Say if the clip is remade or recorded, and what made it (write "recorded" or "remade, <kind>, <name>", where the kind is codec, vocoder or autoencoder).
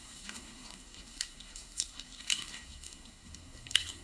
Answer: remade, codec, SNAC